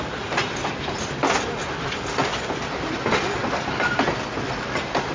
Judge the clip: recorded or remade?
recorded